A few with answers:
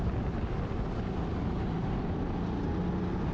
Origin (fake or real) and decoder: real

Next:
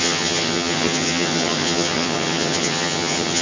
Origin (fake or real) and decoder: fake, vocoder, HiFi-GAN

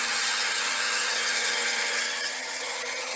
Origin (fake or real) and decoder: fake, vocoder, HiFi-GAN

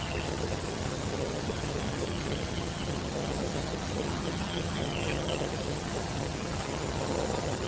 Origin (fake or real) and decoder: fake, vocoder, HiFi-GAN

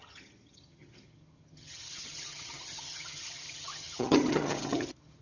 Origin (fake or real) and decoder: fake, vocoder, HiFi-GAN